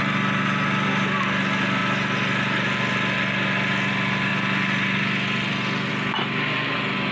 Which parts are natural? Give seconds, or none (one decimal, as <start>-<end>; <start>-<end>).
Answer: 0.0-7.1